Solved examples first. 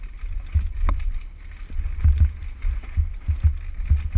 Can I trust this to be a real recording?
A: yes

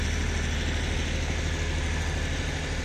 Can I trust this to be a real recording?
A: yes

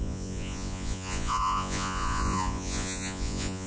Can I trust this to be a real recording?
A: no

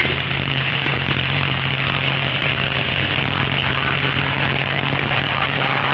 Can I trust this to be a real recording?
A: no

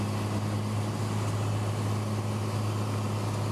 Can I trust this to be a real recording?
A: yes